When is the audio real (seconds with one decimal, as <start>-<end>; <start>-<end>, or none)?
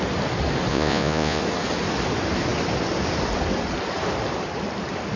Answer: 0.0-0.7; 1.4-5.2